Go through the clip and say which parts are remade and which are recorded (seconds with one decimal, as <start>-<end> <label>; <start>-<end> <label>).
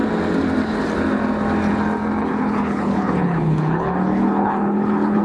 0.0-2.2 recorded; 2.2-5.2 remade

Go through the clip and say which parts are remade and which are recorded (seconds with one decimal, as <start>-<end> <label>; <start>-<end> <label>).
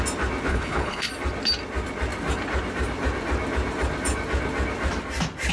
0.0-0.5 recorded; 0.5-1.1 remade; 1.1-5.5 recorded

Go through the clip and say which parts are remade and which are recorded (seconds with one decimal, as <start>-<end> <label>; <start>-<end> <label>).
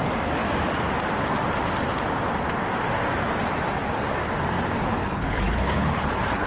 0.0-5.0 recorded; 5.0-6.5 remade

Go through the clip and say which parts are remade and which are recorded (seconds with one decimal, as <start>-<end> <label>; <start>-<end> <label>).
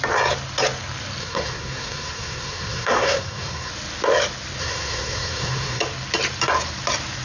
0.0-1.2 recorded; 1.2-3.7 remade; 3.7-4.6 recorded; 4.6-5.8 remade; 5.8-7.2 recorded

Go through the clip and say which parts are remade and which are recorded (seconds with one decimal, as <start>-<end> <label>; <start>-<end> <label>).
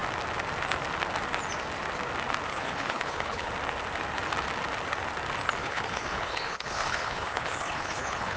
0.0-2.5 recorded; 2.5-3.5 remade; 3.5-5.6 recorded; 5.6-8.4 remade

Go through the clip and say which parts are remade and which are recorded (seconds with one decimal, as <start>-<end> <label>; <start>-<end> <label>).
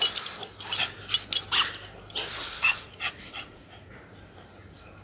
0.0-2.4 recorded; 2.4-4.0 remade; 4.0-5.0 recorded